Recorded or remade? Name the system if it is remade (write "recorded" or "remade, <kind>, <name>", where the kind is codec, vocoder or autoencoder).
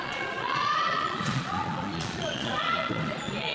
remade, vocoder, Vocos